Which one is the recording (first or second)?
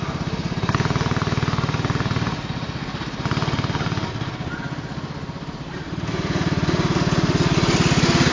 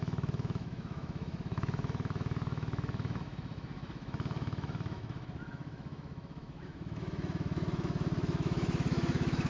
first